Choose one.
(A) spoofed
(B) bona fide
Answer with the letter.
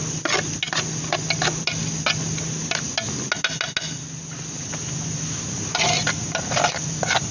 B